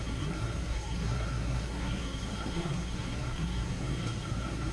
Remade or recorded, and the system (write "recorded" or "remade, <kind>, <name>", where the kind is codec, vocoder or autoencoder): remade, codec, SNAC